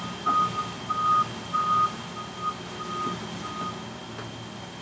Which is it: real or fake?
real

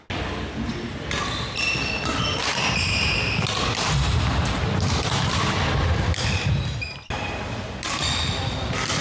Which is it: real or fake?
real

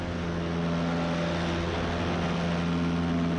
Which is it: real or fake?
real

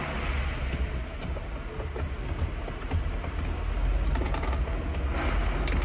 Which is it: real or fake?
real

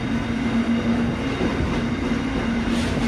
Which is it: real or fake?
real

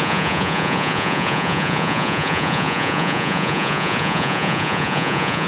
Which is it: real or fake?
fake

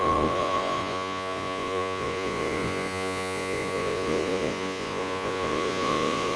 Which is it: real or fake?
fake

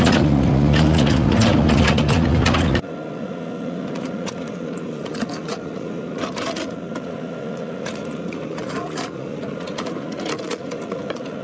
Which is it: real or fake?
fake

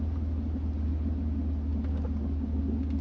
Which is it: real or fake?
real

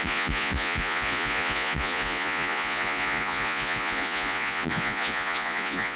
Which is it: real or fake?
fake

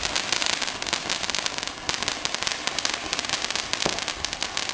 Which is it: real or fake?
real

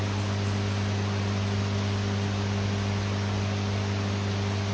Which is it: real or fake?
real